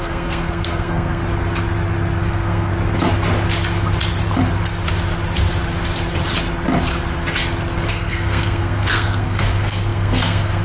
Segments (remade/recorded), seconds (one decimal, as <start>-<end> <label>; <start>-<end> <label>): 0.0-1.2 remade; 1.2-2.2 recorded; 2.2-2.7 remade; 2.7-7.9 recorded; 7.9-10.6 remade